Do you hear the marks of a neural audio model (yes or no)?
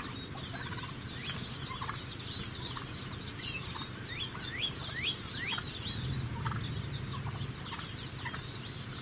no